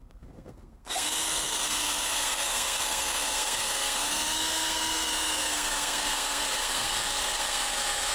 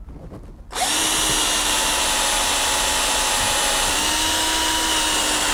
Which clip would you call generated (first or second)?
first